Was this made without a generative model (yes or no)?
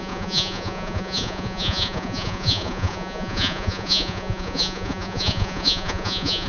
no